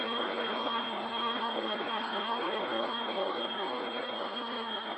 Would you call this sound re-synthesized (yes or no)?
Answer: yes